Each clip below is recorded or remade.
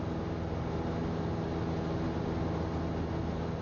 recorded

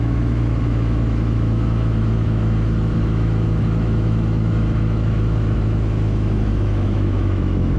remade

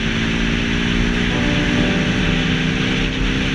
recorded